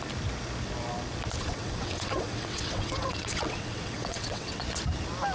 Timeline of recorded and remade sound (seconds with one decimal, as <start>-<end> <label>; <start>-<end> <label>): 0.0-1.4 recorded; 1.4-4.6 remade; 4.6-5.3 recorded